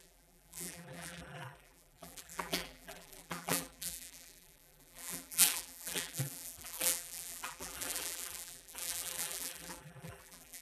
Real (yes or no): no